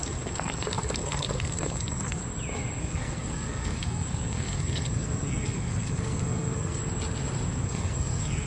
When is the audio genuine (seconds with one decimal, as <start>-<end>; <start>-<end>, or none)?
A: 2.2-2.8; 6.8-7.6